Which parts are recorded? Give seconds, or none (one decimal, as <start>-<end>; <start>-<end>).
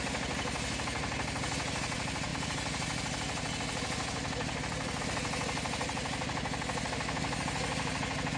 0.0-8.4